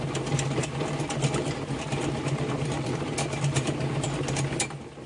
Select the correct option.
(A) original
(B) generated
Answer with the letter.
A